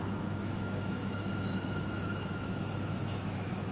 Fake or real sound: fake